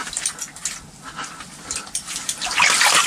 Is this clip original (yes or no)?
yes